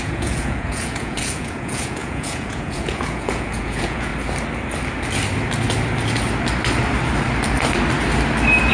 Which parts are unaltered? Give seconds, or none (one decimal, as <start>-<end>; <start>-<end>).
4.1-8.7